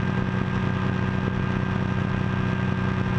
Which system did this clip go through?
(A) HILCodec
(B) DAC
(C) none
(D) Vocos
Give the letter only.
C